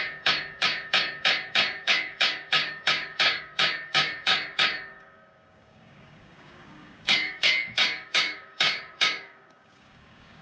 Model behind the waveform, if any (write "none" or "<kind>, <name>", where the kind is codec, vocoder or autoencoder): codec, DAC